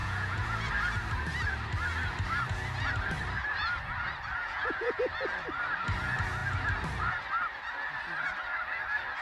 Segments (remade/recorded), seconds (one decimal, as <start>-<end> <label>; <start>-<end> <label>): 0.0-0.7 remade; 0.7-4.4 recorded; 4.4-5.0 remade; 5.0-9.2 recorded